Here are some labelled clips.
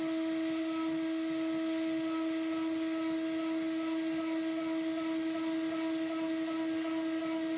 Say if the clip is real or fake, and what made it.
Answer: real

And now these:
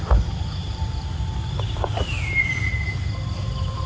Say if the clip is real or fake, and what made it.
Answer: real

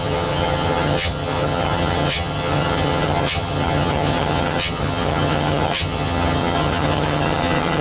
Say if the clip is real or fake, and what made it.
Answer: fake, vocoder, HiFi-GAN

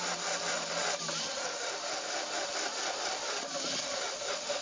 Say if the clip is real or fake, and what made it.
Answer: real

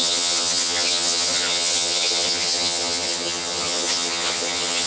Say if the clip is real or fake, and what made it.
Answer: fake, vocoder, HiFi-GAN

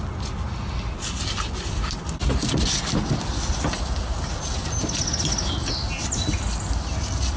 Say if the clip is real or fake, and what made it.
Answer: real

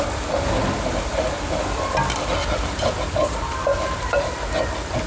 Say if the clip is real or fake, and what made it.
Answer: real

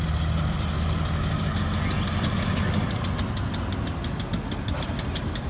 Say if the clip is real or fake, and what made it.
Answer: real